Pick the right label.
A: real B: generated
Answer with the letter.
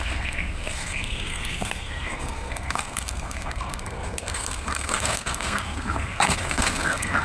B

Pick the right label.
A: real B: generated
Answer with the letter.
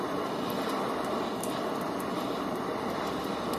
A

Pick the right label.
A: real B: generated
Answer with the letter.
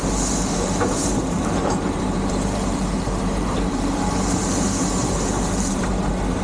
B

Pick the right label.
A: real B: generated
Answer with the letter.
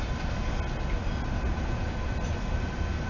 A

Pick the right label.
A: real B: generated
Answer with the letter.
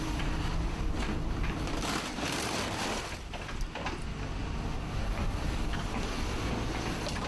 A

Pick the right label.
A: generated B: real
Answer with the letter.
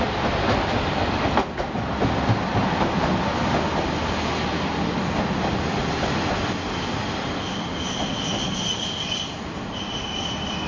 B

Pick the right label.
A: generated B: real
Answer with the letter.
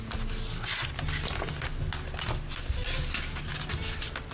B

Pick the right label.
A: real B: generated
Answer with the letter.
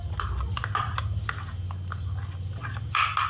A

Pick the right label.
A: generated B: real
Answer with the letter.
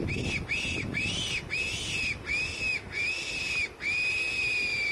B